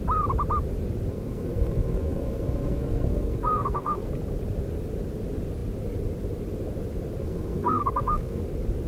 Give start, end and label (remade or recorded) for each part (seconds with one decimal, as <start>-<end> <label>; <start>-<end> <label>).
0.0-1.1 recorded; 1.1-4.1 remade; 4.1-7.2 recorded; 7.2-8.4 remade; 8.4-8.9 recorded